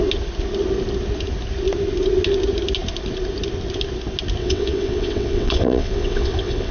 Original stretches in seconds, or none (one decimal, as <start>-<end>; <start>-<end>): 0.0-4.4

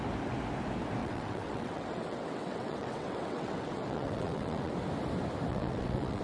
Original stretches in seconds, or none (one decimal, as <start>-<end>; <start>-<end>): 0.0-1.0; 4.7-5.5

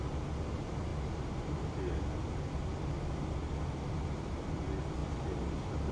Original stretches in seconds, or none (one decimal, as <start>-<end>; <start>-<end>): 0.0-3.4; 4.6-5.0

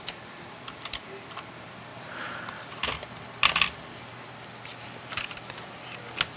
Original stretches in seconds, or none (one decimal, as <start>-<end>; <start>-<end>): 0.0-1.9; 2.4-6.4